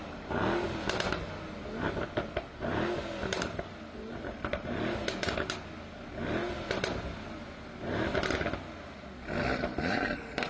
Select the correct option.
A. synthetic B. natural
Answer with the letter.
B